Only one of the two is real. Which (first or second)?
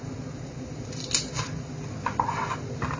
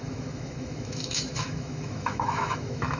first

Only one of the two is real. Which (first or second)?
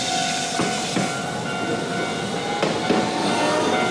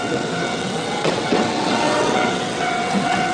first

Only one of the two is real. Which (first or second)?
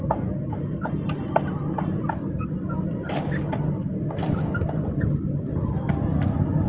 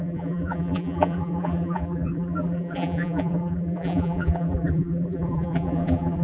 first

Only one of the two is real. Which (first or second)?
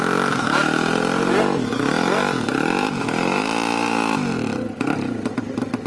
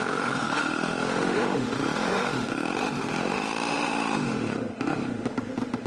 first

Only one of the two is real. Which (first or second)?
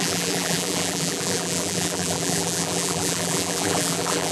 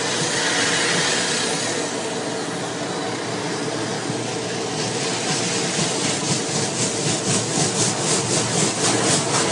second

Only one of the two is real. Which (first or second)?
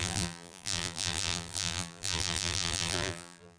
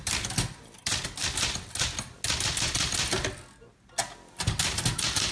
second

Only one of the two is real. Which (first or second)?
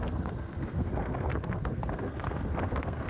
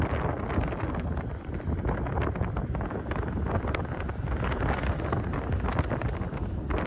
second